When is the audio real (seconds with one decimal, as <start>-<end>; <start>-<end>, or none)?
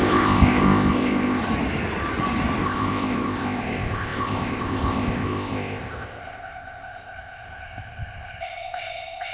1.4-2.6